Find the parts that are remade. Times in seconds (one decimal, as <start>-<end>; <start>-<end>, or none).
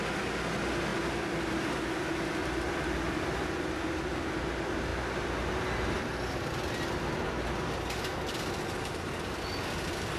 0.9-1.5